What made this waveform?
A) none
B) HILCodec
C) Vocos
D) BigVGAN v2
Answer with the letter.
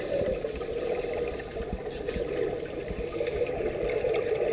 A